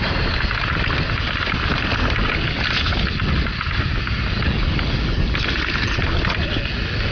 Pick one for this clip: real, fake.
real